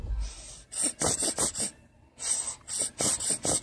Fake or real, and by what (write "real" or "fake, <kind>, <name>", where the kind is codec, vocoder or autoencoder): real